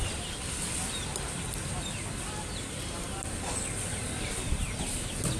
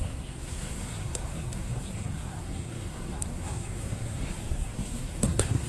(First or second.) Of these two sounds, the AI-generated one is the second